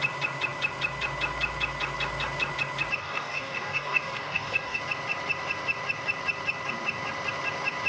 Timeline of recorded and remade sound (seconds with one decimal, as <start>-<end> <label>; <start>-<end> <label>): 0.0-3.0 recorded; 3.0-4.8 remade; 4.8-7.9 recorded